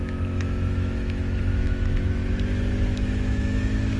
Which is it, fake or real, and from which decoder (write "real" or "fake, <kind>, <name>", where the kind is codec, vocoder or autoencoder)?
fake, autoencoder, DAC-VAE